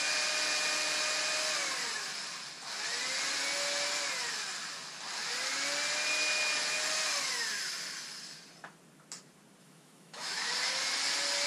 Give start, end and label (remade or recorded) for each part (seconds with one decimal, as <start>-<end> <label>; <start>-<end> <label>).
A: 0.0-9.6 recorded; 9.6-10.5 remade; 10.5-11.5 recorded